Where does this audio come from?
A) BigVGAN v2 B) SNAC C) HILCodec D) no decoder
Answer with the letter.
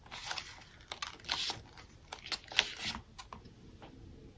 D